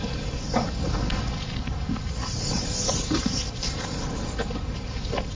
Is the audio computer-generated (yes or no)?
no